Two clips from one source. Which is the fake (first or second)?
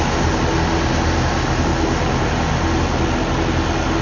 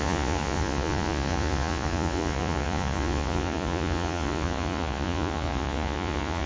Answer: second